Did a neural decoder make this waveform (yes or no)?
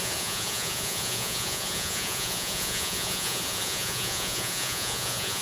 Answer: yes